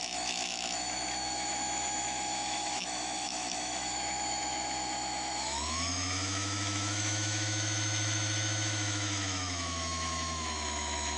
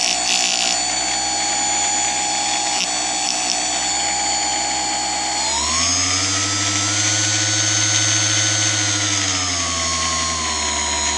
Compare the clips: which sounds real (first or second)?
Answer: second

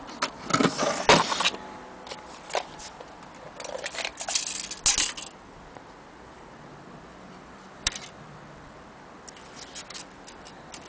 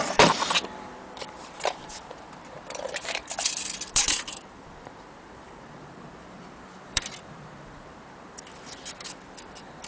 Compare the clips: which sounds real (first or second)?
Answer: first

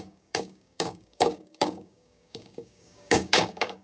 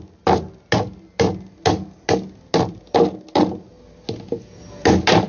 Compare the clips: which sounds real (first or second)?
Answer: second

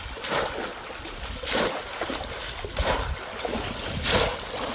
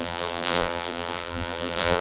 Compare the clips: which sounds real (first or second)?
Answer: first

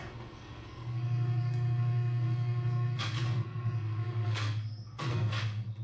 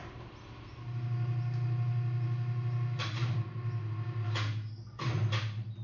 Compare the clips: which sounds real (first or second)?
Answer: second